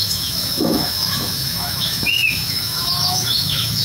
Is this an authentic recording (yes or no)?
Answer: no